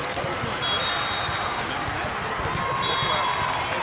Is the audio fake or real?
real